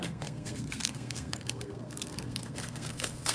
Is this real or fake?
fake